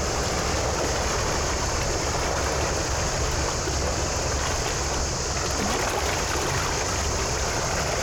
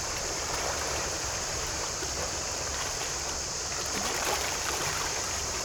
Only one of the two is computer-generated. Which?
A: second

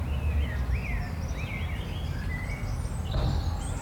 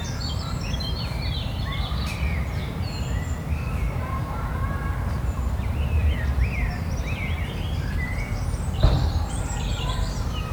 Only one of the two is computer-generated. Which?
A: second